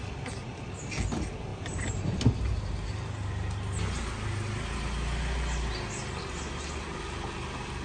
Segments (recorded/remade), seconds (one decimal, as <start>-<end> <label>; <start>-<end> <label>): 0.0-7.8 recorded